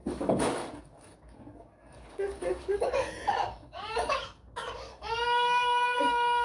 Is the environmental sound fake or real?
fake